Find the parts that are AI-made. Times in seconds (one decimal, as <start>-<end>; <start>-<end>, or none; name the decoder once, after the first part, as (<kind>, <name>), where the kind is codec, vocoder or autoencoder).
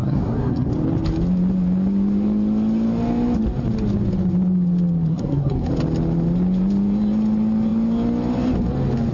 0.0-0.7 (codec, SNAC); 5.1-5.7